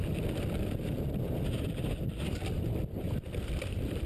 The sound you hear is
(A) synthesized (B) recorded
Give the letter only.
A